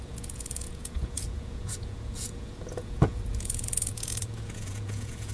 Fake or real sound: fake